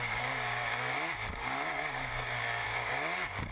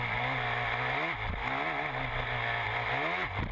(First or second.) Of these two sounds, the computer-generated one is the first